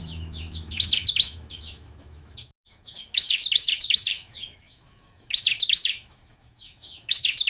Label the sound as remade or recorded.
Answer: remade